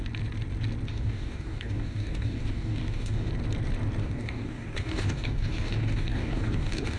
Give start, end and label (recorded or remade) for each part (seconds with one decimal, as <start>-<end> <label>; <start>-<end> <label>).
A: 0.0-0.9 recorded; 0.9-3.3 remade; 3.3-4.0 recorded; 4.0-7.0 remade